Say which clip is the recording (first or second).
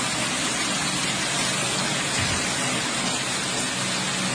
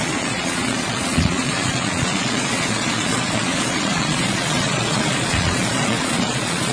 first